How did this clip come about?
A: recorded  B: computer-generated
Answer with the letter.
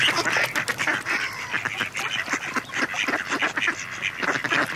A